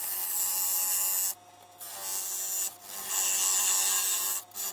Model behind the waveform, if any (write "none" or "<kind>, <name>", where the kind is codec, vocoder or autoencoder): none